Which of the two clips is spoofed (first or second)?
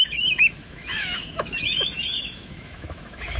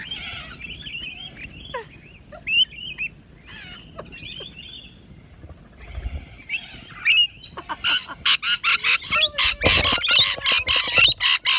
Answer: first